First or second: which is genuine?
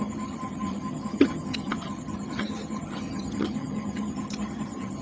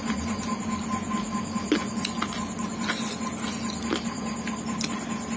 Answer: second